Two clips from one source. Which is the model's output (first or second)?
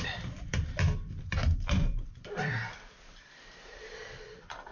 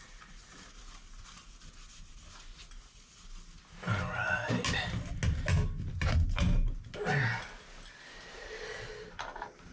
first